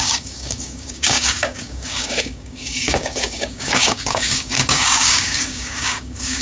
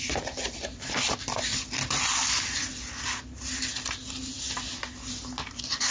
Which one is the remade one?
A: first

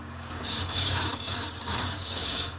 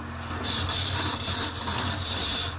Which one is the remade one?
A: first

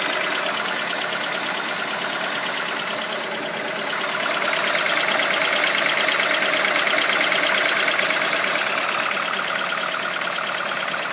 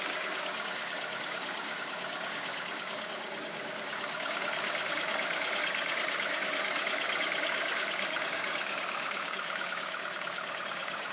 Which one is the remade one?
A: second